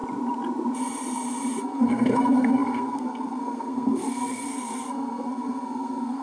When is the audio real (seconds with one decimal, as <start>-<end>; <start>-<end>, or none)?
0.0-1.6